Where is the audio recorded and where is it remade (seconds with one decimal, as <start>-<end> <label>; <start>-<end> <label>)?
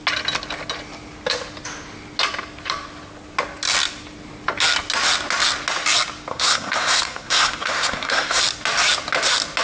0.0-6.3 recorded; 6.3-8.4 remade; 8.4-9.6 recorded